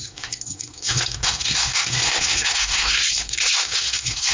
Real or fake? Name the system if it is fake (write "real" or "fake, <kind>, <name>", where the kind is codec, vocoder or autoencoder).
fake, codec, SNAC